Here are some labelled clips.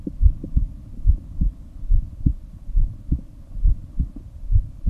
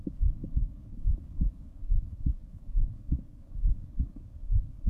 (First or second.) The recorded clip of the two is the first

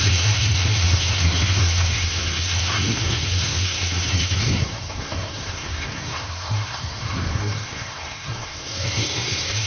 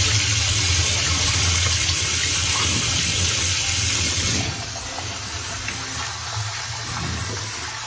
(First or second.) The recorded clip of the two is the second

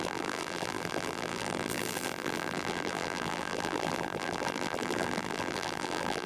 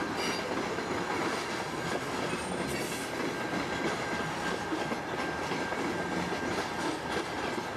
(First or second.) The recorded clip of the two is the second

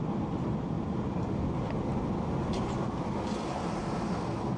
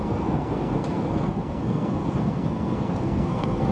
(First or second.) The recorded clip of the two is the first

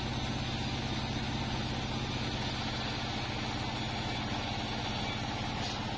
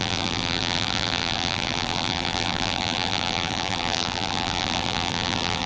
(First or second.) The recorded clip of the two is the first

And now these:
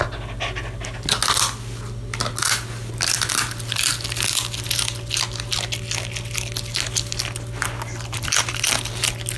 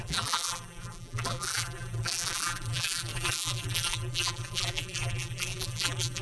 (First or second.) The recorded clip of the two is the first